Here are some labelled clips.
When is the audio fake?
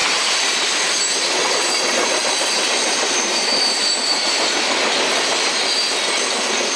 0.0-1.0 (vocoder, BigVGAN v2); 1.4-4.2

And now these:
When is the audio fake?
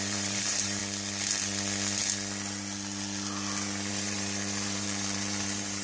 0.0-0.8 (vocoder, BigVGAN v2); 3.9-5.8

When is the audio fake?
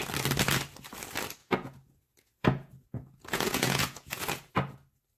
1.4-4.5 (vocoder, Vocos)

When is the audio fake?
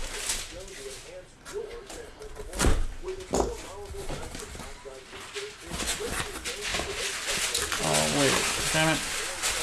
1.7-3.6 (vocoder, BigVGAN v2); 6.7-7.3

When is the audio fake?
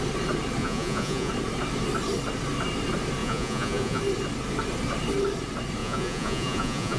0.6-1.3 (vocoder, Vocos); 3.2-4.0; 5.8-7.0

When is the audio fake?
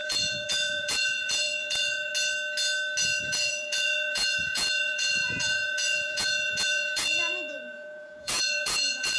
0.0-2.1 (vocoder, Vocos); 3.2-9.2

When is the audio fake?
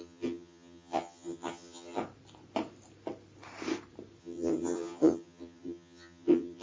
0.0-2.0 (vocoder, HiFi-GAN); 4.2-6.6